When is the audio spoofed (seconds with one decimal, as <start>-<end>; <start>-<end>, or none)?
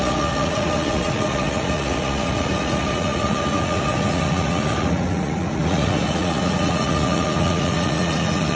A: 0.0-8.6